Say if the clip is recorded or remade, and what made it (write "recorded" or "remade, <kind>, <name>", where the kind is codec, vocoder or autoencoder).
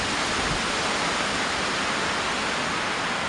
recorded